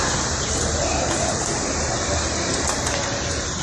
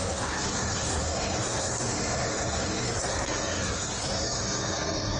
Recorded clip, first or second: first